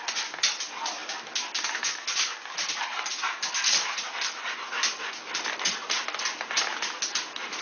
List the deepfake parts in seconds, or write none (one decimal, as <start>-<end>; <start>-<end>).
none